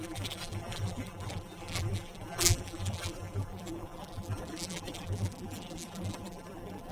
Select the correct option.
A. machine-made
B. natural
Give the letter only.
A